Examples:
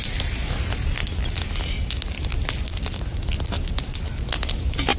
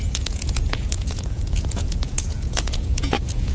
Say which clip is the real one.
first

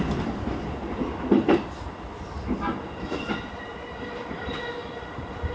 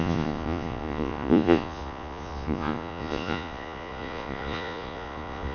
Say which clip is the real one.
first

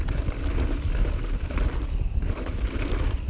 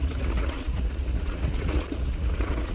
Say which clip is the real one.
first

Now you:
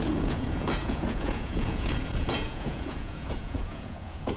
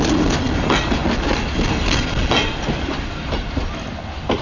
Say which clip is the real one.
second